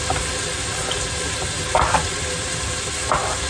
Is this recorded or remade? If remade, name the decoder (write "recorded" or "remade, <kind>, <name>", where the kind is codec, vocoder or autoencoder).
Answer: recorded